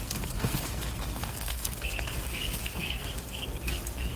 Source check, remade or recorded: remade